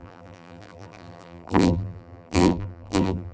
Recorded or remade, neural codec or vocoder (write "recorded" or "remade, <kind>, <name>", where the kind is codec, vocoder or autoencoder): remade, vocoder, BigVGAN v2